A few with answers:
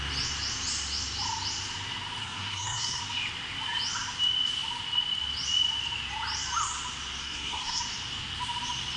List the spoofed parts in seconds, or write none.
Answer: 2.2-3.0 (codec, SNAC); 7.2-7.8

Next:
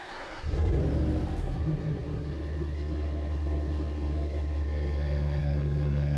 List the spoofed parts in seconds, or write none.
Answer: 0.0-0.8 (codec, SNAC); 1.4-6.2

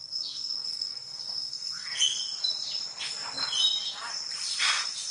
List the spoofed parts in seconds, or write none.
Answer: 0.0-2.2 (codec, SNAC)

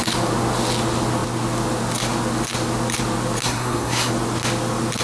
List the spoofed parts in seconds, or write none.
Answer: 3.4-4.1 (codec, SNAC)

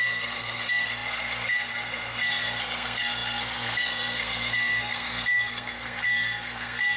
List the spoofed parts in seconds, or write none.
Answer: 0.0-7.0 (codec, SNAC)